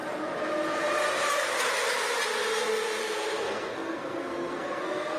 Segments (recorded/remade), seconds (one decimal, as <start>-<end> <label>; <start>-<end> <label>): 0.0-3.0 recorded; 3.0-5.2 remade